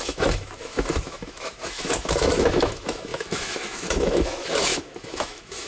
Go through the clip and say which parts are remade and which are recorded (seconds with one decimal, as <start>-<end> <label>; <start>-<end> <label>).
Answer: 0.0-5.7 remade